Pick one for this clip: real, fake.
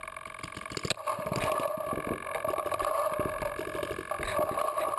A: real